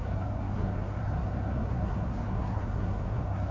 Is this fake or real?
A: fake